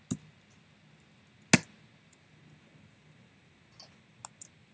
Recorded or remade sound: recorded